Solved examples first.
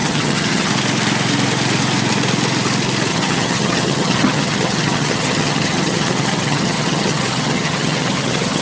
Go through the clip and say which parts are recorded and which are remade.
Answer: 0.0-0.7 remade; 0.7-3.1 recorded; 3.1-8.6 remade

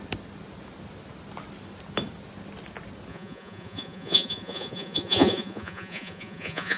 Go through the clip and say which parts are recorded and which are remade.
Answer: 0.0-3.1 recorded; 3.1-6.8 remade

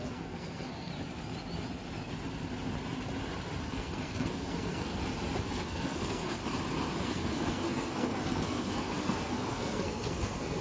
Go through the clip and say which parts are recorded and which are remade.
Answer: 0.0-0.9 remade; 0.9-3.6 recorded; 3.6-4.9 remade; 4.9-5.5 recorded; 5.5-6.4 remade; 6.4-7.0 recorded; 7.0-10.6 remade

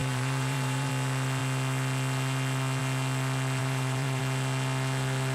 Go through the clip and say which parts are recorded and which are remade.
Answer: 0.0-0.9 remade; 0.9-3.6 recorded; 3.6-4.2 remade; 4.2-5.3 recorded

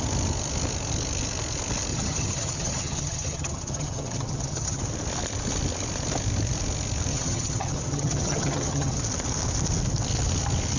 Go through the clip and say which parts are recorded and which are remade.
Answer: 0.0-1.9 recorded; 1.9-4.8 remade; 4.8-7.1 recorded; 7.1-9.0 remade; 9.0-10.8 recorded